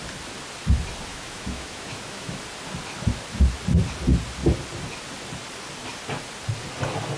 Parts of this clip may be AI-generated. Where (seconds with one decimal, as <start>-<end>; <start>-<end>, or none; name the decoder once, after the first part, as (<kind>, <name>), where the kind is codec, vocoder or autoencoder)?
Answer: 1.1-2.4 (autoencoder, DAC-VAE)